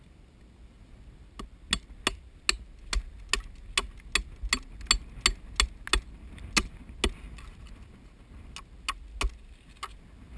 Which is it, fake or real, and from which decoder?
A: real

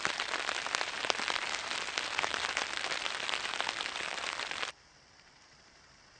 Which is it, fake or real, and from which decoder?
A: fake, vocoder, BigVGAN v2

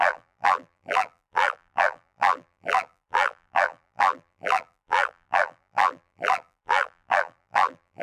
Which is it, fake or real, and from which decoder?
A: fake, vocoder, BigVGAN v2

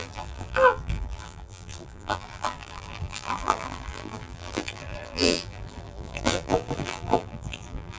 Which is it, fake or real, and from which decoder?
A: fake, vocoder, BigVGAN v2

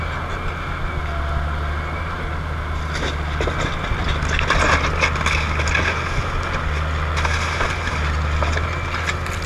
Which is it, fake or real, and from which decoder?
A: real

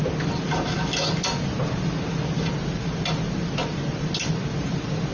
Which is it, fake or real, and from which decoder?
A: real